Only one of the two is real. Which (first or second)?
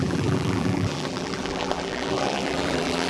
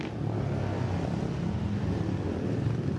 second